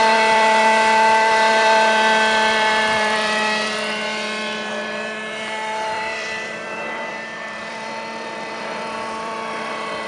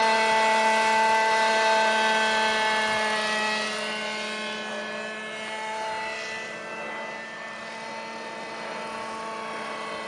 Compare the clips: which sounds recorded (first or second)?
second